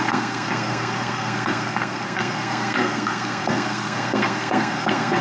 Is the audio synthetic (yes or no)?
yes